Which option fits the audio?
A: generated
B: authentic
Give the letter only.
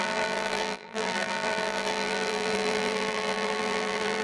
A